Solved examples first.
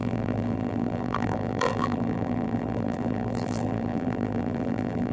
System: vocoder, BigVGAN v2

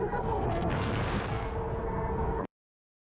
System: codec, SNAC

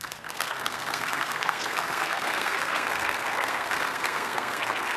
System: codec, SNAC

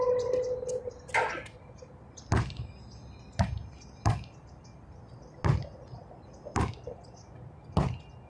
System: none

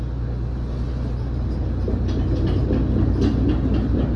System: none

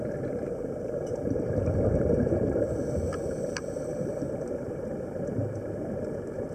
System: vocoder, BigVGAN v2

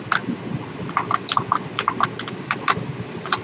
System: none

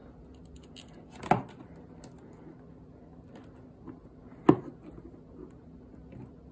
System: none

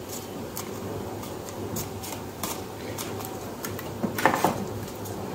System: none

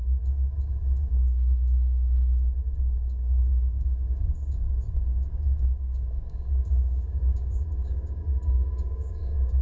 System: codec, DAC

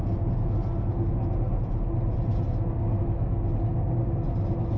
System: none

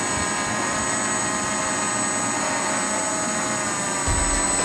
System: none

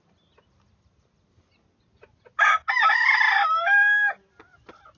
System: none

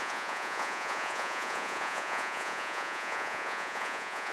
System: vocoder, Vocos